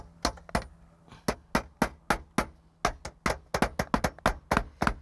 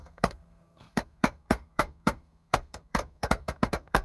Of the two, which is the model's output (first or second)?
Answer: second